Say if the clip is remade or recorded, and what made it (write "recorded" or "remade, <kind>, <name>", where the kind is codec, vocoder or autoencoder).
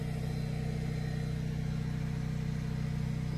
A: recorded